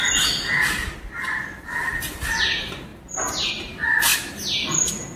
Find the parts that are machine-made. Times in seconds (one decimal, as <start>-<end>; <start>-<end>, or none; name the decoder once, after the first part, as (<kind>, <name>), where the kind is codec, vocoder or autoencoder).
none